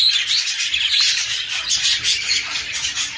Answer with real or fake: real